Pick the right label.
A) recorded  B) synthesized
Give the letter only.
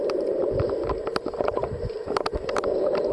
A